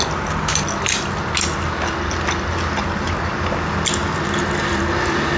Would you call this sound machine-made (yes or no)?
no